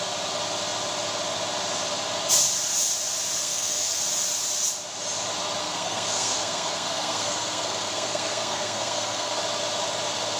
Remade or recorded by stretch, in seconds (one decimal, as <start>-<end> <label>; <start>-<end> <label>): 0.0-3.4 recorded; 3.4-4.0 remade; 4.0-5.6 recorded; 5.6-9.4 remade; 9.4-10.4 recorded